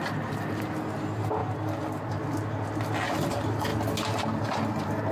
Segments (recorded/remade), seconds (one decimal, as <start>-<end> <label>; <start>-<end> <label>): 0.0-5.1 recorded